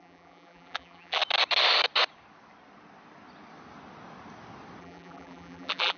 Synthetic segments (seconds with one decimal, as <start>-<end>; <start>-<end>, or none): 0.0-1.2; 4.8-6.0